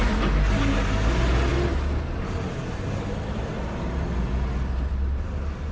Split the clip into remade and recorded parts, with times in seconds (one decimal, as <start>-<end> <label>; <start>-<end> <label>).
0.0-5.7 recorded

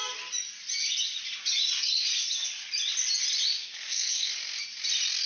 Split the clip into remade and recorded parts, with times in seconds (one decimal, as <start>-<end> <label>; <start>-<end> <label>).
0.0-3.6 recorded; 3.6-4.3 remade; 4.3-5.3 recorded

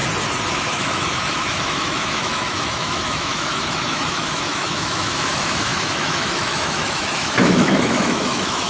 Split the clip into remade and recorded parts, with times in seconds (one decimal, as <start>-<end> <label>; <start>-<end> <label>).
0.0-0.5 recorded; 0.5-8.7 remade

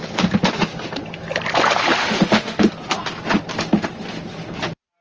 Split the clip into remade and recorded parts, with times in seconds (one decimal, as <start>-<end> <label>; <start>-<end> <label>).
0.0-2.0 recorded; 2.0-2.7 remade; 2.7-5.0 recorded

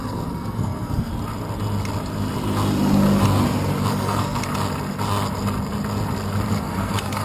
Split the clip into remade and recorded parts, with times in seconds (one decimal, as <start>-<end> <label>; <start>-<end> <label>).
0.0-1.1 remade; 1.1-3.9 recorded; 3.9-4.4 remade; 4.4-6.5 recorded; 6.5-7.2 remade

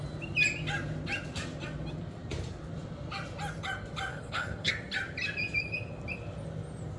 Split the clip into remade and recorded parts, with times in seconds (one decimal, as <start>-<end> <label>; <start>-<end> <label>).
0.0-4.1 recorded; 4.1-4.7 remade; 4.7-7.0 recorded

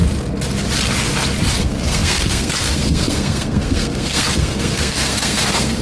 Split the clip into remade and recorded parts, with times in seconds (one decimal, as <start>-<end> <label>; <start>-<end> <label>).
0.0-1.6 recorded; 1.6-5.8 remade